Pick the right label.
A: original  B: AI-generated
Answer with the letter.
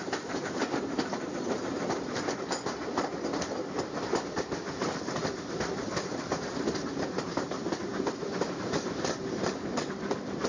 B